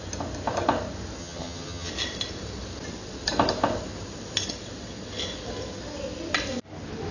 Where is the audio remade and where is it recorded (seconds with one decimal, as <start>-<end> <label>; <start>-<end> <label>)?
0.0-1.2 recorded; 1.2-1.9 remade; 1.9-7.1 recorded